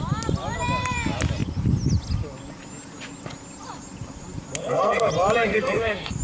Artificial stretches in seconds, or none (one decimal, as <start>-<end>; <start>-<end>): 4.6-5.1; 5.5-6.2